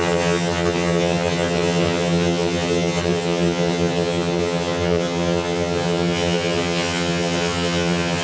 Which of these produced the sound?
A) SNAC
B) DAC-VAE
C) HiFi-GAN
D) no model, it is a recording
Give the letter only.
C